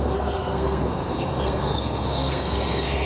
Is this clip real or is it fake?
fake